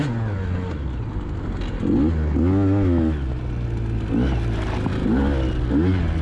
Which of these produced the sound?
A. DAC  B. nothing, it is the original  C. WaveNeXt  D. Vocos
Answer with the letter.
B